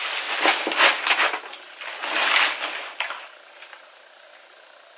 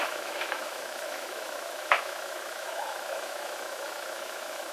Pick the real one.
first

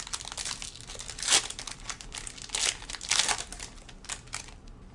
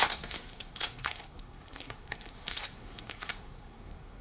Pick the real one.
first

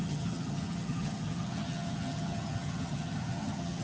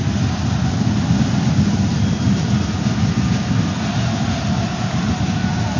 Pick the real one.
second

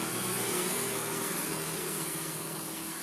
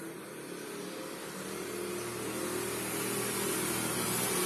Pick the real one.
second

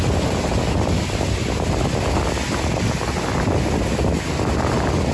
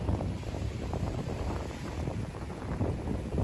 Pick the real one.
first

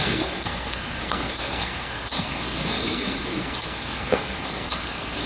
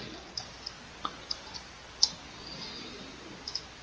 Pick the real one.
second